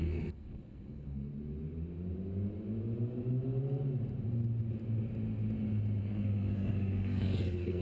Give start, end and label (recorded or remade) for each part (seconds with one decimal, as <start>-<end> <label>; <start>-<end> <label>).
0.0-1.3 remade; 1.3-6.0 recorded; 6.0-7.8 remade